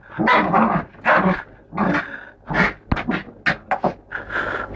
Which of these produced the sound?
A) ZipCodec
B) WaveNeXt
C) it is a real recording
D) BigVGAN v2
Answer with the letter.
C